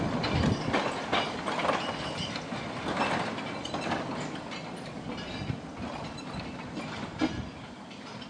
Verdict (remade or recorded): recorded